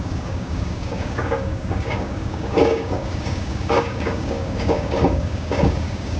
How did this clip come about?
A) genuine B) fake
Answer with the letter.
B